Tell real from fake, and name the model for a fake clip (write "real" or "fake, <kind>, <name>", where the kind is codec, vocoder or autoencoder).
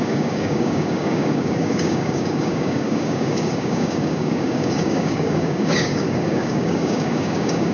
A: fake, codec, DAC